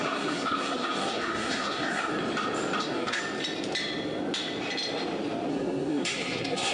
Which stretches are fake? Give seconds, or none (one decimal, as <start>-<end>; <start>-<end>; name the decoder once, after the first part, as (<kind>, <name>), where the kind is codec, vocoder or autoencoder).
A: 0.0-2.1 (codec, SNAC); 2.8-3.2; 5.5-6.7